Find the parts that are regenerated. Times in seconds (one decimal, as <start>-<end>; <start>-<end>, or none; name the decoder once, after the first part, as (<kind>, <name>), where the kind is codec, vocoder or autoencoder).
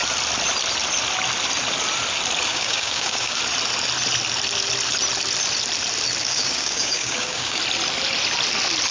2.5-3.4 (codec, DAC); 6.2-7.6